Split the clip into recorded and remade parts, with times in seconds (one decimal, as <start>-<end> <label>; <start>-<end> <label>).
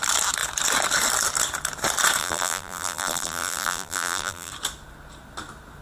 0.0-2.2 recorded; 2.2-4.5 remade; 4.5-5.8 recorded